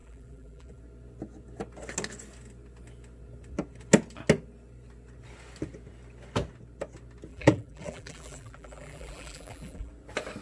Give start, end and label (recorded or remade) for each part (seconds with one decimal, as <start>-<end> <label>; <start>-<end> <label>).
0.0-0.8 remade; 0.8-7.3 recorded; 7.3-9.9 remade; 9.9-10.4 recorded